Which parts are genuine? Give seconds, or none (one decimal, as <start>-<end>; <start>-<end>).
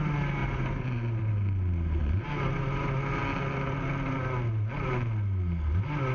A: 0.0-0.4; 1.3-6.1